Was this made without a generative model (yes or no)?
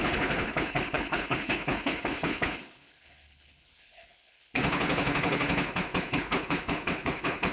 no